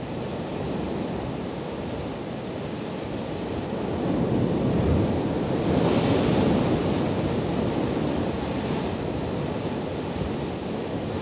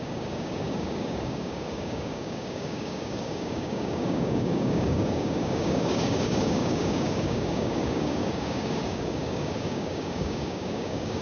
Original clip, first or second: first